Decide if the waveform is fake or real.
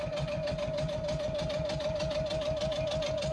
real